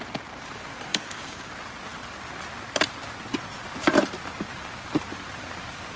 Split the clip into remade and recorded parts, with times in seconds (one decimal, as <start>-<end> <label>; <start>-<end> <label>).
0.0-0.9 recorded; 0.9-1.5 remade; 1.5-6.0 recorded